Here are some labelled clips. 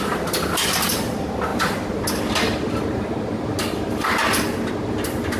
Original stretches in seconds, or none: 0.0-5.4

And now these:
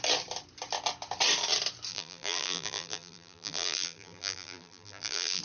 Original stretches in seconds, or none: 0.0-1.9

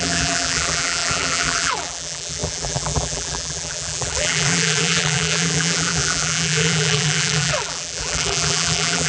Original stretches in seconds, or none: none

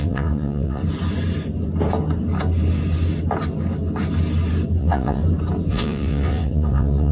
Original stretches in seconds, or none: 0.8-4.8; 5.2-5.7

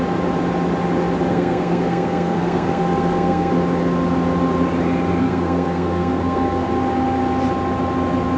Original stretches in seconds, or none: 0.0-1.3; 3.5-5.2; 6.7-8.4